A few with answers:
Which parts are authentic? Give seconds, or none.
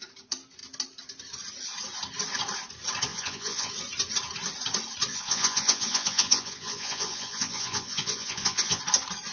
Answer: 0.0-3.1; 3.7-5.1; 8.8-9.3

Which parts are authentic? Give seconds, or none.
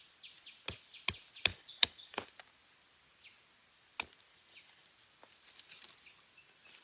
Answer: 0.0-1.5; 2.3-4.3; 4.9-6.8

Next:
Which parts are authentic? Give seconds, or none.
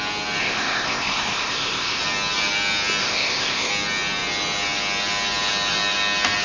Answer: 0.0-0.4; 2.0-3.0; 3.7-6.4